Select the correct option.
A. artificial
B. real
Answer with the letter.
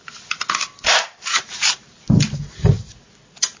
B